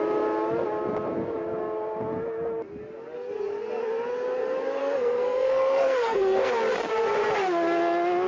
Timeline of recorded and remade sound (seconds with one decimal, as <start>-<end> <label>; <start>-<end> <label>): 0.0-4.8 recorded; 4.8-6.5 remade; 6.5-8.3 recorded